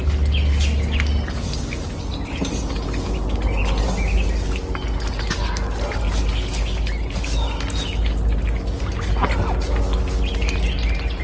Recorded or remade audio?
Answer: recorded